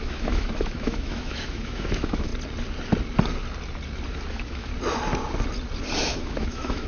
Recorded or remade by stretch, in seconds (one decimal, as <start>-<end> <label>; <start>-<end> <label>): 0.0-2.3 remade; 2.3-4.3 recorded; 4.3-4.7 remade; 4.7-6.0 recorded; 6.0-6.9 remade